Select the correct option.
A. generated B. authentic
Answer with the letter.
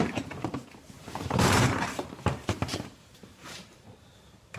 A